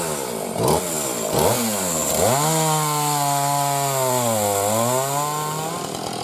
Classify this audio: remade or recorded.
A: recorded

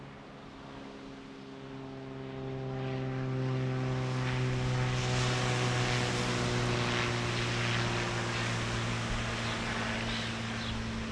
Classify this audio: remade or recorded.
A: recorded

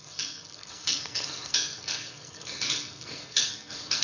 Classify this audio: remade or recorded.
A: remade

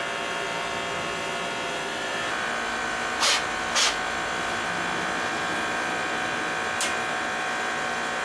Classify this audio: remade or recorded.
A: recorded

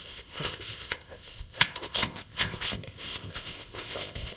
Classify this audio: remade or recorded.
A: remade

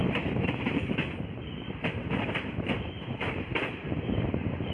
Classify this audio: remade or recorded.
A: remade